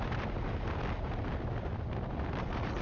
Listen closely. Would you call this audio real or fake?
real